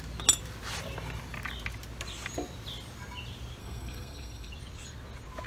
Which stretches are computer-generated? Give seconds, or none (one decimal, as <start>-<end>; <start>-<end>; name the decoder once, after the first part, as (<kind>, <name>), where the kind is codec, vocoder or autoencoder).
3.6-4.5 (codec, SNAC)